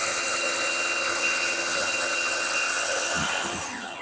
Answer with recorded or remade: remade